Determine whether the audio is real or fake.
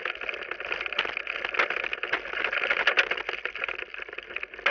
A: real